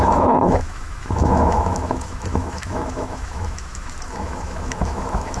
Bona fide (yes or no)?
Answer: no